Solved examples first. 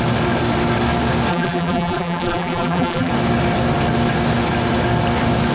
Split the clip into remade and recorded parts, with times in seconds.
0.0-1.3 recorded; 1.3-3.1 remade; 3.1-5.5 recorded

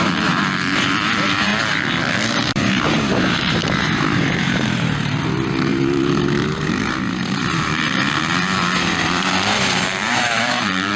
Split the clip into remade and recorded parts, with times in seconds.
0.0-1.5 remade; 1.5-2.1 recorded; 2.1-11.0 remade

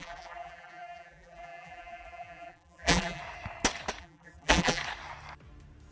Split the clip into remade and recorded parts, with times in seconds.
0.0-3.2 remade; 3.2-4.0 recorded; 4.0-4.8 remade; 4.8-5.9 recorded

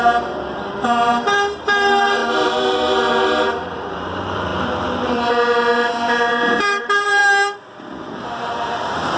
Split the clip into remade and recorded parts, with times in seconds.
0.0-7.2 remade; 7.2-8.0 recorded; 8.0-9.2 remade

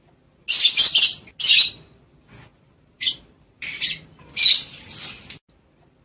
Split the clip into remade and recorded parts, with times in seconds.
0.0-2.5 recorded; 2.5-4.2 remade; 4.2-6.0 recorded

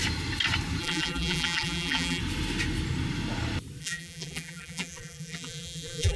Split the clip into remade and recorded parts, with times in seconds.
0.0-0.8 recorded; 0.8-2.2 remade; 2.2-3.8 recorded; 3.8-6.2 remade

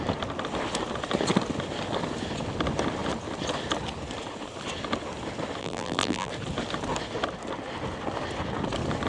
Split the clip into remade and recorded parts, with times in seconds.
0.0-5.6 recorded; 5.6-6.3 remade; 6.3-9.1 recorded